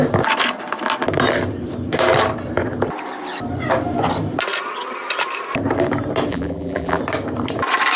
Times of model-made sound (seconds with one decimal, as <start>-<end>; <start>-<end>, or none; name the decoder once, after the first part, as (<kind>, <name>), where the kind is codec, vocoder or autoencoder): 6.3-7.0 (vocoder, BigVGAN v2)